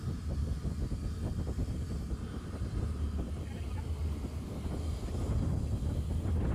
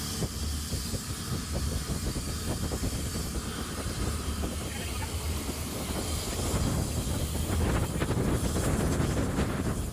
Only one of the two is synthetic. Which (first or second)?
second